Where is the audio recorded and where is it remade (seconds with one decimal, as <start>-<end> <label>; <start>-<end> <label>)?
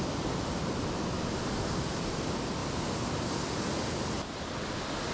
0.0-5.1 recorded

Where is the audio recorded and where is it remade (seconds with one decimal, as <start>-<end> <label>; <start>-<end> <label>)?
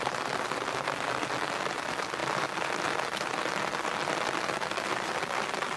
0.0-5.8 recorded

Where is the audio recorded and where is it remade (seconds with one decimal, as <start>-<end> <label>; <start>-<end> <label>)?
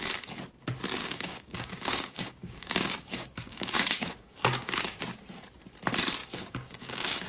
0.0-1.0 recorded; 1.0-5.0 remade; 5.0-6.2 recorded; 6.2-7.3 remade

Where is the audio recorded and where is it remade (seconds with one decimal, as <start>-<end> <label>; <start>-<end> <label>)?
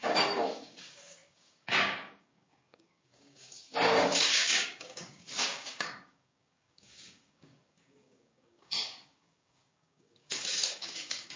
0.0-11.4 remade